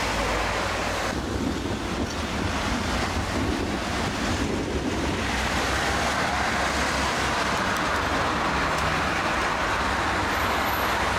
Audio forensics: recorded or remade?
recorded